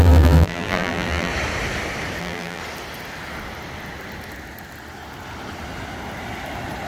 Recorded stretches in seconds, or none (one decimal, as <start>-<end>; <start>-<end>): 1.3-2.2; 2.6-6.9